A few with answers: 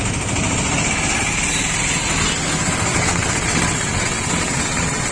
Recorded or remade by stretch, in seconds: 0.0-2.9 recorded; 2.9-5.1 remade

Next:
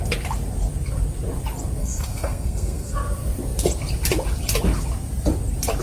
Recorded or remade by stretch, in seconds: 0.0-1.8 recorded; 1.8-2.9 remade; 2.9-5.8 recorded

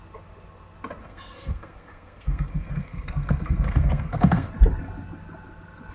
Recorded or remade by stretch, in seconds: 0.0-1.0 recorded; 1.0-4.5 remade; 4.5-5.9 recorded

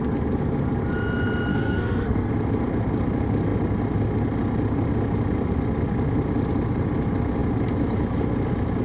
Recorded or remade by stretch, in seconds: 0.0-1.5 recorded; 1.5-2.3 remade; 2.3-8.8 recorded

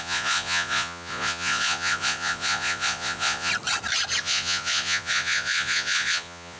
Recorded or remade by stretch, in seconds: 0.0-3.5 remade; 3.5-4.2 recorded; 4.2-6.6 remade